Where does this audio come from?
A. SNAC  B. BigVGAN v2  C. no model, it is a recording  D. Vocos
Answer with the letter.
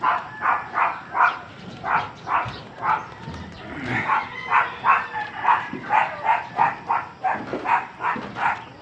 C